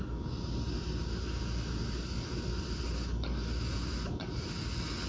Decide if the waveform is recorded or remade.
recorded